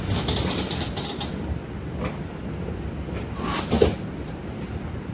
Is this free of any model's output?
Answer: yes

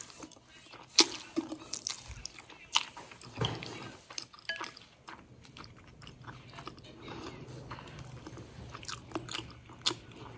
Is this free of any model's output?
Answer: yes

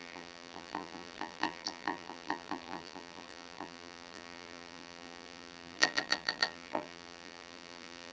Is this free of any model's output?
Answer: no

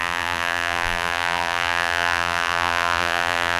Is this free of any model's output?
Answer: no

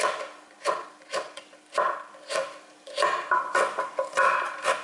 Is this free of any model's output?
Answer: yes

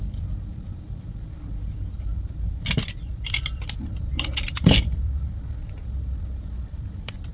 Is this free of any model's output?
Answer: no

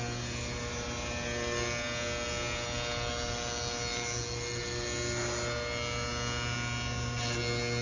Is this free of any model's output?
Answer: yes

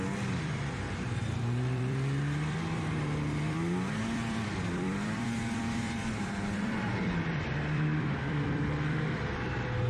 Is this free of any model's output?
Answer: no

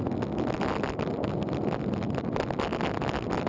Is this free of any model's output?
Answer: yes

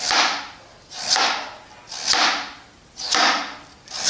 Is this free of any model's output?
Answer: yes